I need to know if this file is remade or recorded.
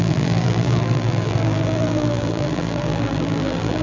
remade